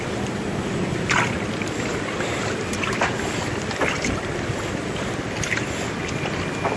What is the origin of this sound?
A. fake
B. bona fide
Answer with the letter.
B